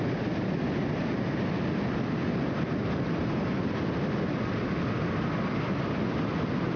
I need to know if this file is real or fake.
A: real